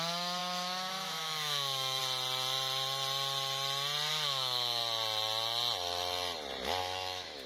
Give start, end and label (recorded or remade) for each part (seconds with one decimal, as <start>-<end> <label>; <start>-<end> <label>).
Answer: 0.0-2.0 remade; 2.0-4.1 recorded; 4.1-4.8 remade; 4.8-6.8 recorded; 6.8-7.5 remade